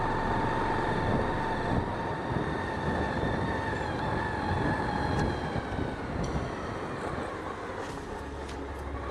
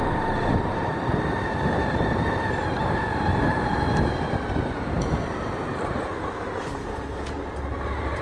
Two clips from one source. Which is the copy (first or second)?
second